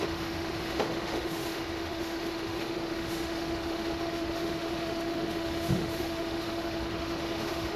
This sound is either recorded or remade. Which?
remade